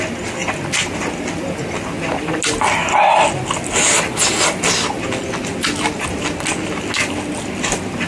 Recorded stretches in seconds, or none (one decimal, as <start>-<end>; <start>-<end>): 0.0-8.1